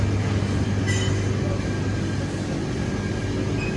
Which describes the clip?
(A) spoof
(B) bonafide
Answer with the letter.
B